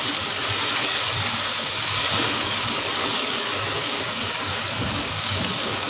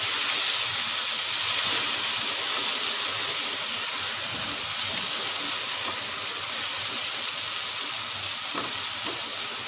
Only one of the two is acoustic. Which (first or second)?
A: second